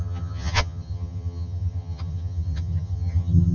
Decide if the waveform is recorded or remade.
remade